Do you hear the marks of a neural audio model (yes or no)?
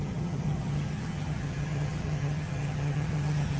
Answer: yes